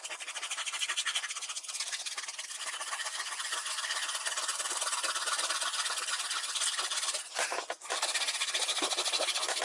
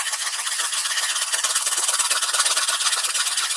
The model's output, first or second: second